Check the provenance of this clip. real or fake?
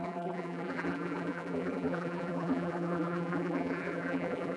fake